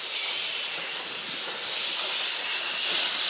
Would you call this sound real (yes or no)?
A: yes